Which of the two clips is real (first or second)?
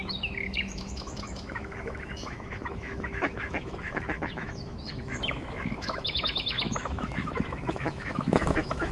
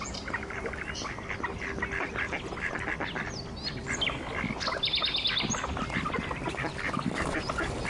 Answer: second